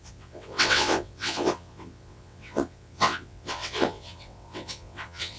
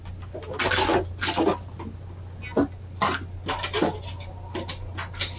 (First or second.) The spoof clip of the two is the first